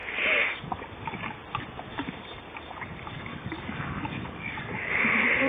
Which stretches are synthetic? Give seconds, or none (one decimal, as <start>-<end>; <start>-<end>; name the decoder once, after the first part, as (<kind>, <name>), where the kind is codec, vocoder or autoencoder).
3.3-4.9 (codec, DAC)